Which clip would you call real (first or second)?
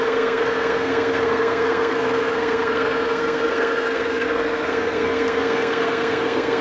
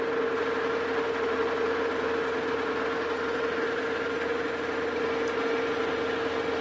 second